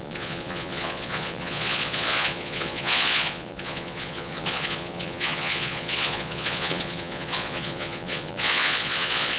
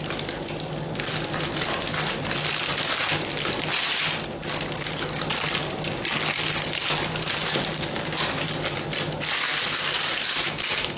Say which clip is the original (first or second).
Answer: second